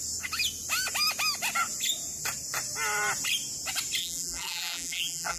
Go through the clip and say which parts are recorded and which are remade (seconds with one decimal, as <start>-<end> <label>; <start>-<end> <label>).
0.0-4.0 recorded; 4.0-5.4 remade